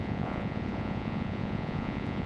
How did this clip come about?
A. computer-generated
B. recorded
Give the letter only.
A